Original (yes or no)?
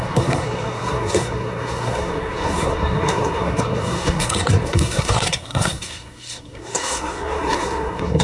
no